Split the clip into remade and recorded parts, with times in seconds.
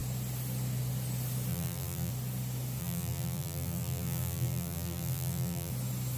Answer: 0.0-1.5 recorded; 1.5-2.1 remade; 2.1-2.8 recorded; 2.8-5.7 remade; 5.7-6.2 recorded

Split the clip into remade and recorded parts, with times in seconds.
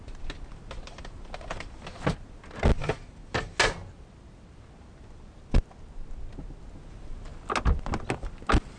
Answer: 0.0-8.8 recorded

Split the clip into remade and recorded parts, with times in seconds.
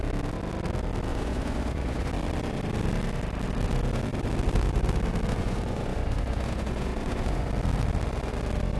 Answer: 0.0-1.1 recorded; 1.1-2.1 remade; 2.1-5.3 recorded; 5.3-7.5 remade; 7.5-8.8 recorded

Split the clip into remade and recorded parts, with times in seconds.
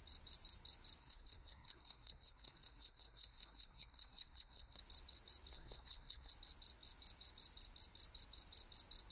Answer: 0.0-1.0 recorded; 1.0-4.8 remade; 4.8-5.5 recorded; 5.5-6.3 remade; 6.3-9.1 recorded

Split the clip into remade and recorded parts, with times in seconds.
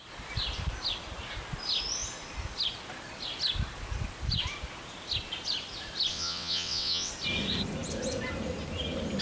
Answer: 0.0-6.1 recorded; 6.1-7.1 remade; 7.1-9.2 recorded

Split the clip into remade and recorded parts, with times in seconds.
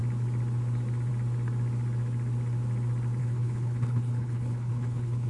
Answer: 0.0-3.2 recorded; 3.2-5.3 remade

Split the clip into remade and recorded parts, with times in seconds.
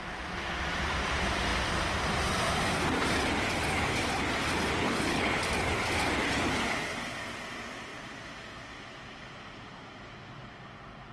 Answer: 0.0-4.8 recorded; 4.8-5.5 remade; 5.5-11.1 recorded